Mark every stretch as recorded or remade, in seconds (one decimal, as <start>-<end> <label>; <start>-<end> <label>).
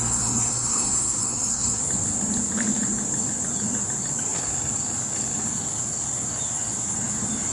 0.0-1.8 remade; 1.8-7.5 recorded